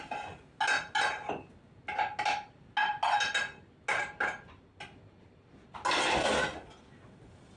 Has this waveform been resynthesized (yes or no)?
no